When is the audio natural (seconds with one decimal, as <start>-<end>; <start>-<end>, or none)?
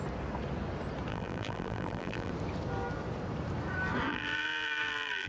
0.0-1.1; 2.3-4.1